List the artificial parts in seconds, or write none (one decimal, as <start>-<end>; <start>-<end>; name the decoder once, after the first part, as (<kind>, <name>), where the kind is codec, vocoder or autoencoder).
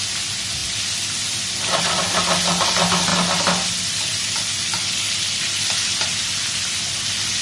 none